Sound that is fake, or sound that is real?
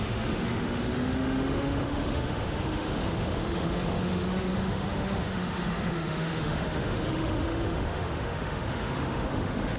fake